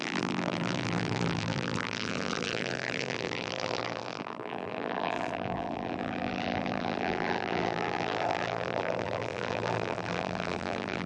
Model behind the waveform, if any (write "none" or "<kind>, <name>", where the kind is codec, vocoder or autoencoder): vocoder, BigVGAN v2